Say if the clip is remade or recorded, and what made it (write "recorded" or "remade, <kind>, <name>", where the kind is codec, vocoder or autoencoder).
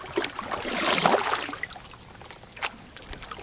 recorded